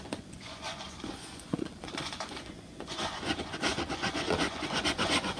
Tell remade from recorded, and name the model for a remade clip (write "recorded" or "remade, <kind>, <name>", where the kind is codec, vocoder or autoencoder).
remade, vocoder, Vocos